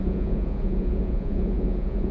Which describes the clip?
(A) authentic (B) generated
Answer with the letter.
B